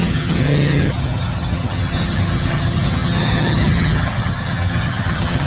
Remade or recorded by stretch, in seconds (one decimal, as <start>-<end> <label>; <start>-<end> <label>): 0.0-5.5 remade